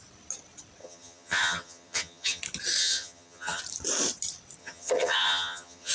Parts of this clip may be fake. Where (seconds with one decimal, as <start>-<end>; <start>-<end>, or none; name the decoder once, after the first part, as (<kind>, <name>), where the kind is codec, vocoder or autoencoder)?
0.8-2.4 (vocoder, HiFi-GAN); 2.8-3.6; 4.6-5.9